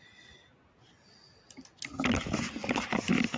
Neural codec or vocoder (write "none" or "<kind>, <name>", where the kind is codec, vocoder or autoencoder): none